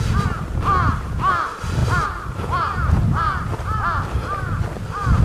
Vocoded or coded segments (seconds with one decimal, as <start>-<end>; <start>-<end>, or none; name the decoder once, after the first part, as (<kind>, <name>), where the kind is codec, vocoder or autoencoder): 1.8-5.2 (vocoder, BigVGAN v2)

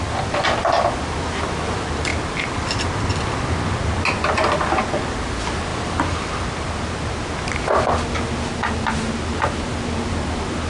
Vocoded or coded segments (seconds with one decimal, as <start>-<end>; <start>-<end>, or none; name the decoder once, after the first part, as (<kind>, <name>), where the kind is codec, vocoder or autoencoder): 2.1-3.1 (vocoder, BigVGAN v2); 5.7-7.1

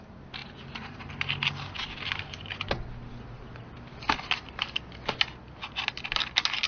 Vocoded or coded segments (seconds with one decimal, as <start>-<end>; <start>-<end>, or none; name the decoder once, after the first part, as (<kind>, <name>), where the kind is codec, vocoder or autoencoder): 0.4-1.1 (vocoder, BigVGAN v2)

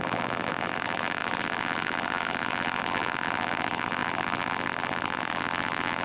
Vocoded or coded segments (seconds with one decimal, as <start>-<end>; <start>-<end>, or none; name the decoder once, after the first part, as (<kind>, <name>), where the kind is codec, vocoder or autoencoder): 0.0-6.0 (vocoder, BigVGAN v2)

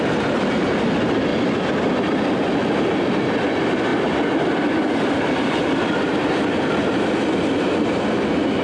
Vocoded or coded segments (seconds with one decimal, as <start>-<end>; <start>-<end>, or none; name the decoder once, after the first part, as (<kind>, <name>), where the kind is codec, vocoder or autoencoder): 3.9-7.0 (vocoder, BigVGAN v2)

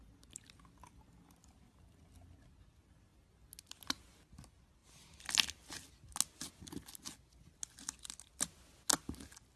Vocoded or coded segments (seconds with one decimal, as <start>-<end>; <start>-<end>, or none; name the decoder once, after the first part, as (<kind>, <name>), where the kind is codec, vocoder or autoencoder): none

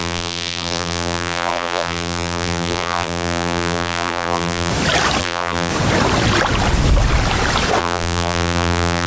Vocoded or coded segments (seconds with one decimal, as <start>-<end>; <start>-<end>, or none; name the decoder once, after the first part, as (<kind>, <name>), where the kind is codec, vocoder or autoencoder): 0.0-4.7 (vocoder, BigVGAN v2); 5.2-5.7; 7.8-9.1